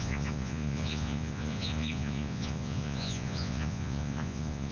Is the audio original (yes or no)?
no